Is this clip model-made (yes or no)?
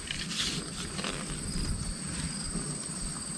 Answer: no